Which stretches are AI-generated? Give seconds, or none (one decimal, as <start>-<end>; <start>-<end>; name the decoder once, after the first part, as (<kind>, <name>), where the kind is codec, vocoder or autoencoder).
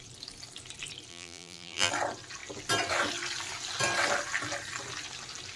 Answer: 1.1-1.9 (vocoder, BigVGAN v2)